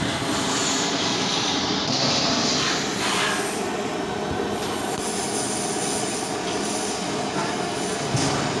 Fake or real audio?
real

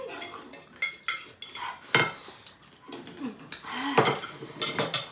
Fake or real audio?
real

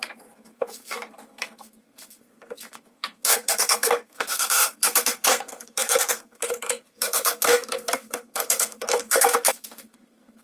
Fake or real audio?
fake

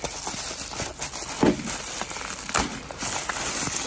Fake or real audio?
real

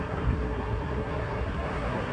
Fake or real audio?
fake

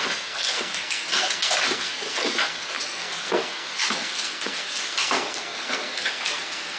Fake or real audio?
fake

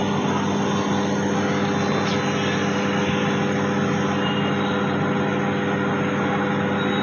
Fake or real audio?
real